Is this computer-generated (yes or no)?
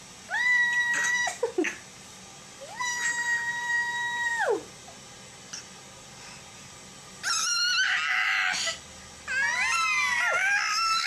no